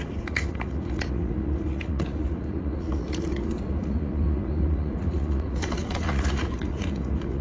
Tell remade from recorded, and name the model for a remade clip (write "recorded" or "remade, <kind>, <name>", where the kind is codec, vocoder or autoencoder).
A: remade, vocoder, Vocos